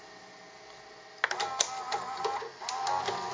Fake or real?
real